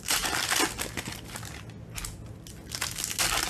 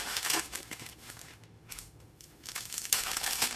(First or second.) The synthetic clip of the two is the second